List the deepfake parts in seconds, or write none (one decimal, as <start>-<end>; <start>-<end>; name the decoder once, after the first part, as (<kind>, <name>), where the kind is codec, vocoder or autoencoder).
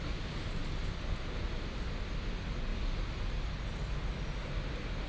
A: none